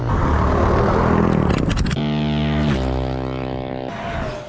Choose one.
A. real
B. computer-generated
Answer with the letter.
A